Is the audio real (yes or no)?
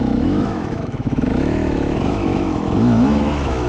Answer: no